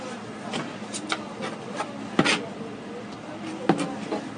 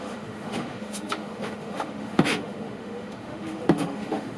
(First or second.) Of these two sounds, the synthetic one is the second